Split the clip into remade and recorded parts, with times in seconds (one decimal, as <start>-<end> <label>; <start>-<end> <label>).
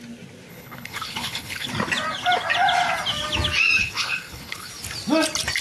0.0-0.5 recorded; 0.5-1.7 remade; 1.7-3.8 recorded; 3.8-4.7 remade; 4.7-5.6 recorded